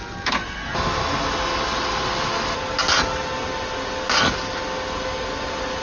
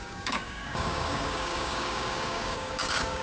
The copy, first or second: second